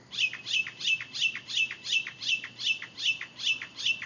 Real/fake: real